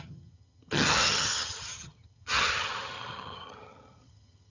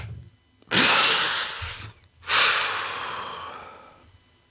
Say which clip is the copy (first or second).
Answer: first